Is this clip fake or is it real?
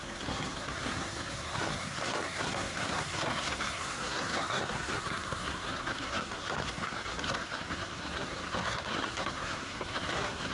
fake